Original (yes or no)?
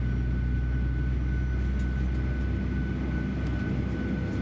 yes